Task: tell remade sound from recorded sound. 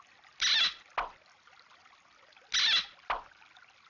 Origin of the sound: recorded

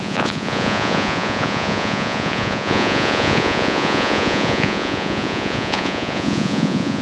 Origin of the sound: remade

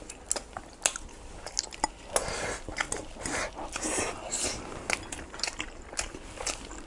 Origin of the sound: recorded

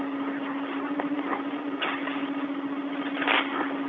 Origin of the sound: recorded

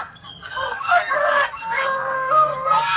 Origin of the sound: remade